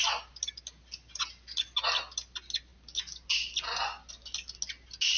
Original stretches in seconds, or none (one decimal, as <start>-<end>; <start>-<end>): 0.0-5.2

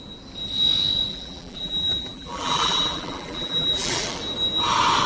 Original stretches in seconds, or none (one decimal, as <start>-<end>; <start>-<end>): 0.0-1.1; 4.2-5.1